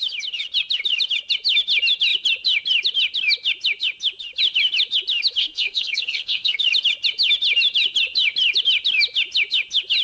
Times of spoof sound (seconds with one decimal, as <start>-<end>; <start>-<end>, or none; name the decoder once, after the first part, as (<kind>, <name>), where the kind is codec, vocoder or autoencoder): 5.4-6.6 (codec, SNAC)